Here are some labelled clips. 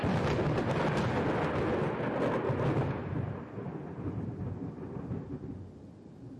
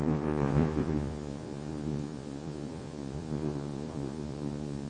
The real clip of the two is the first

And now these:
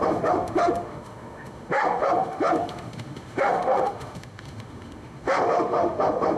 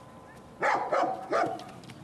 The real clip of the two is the second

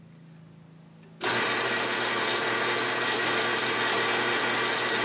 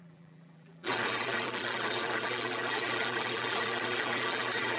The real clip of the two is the first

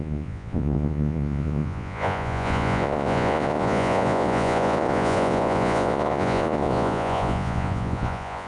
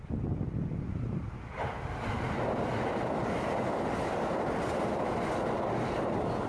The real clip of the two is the second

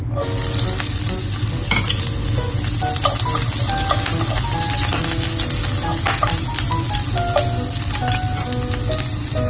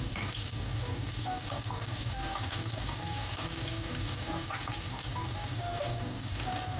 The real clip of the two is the first